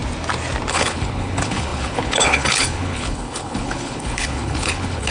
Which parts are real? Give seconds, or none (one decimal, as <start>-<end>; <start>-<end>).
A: 0.0-0.7